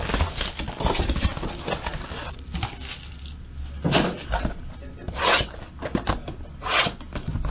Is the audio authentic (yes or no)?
yes